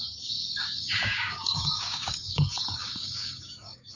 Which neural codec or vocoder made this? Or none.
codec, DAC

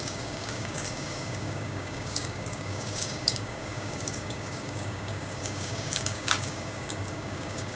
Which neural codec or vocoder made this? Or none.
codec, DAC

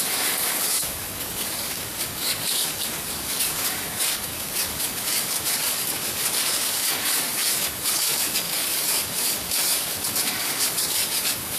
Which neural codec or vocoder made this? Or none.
codec, DAC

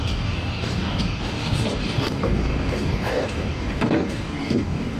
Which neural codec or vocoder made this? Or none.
codec, DAC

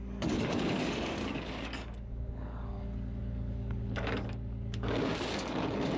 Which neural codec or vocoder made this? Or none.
codec, DAC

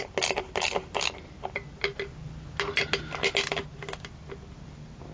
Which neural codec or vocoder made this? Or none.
none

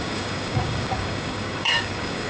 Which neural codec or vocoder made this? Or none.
codec, DAC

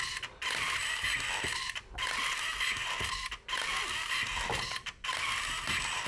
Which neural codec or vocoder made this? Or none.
none